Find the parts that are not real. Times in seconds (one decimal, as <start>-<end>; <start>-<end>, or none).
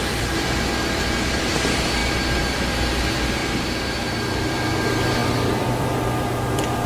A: 0.0-2.0; 2.7-3.4; 4.2-6.9